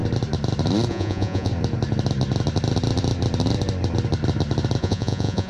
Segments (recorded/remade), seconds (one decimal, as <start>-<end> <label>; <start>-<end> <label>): 0.0-0.9 recorded; 0.9-1.5 remade; 1.5-4.8 recorded; 4.8-5.5 remade